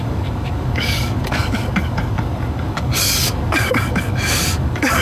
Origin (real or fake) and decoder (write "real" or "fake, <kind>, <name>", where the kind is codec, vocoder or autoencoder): fake, codec, DAC